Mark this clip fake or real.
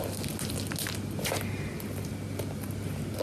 real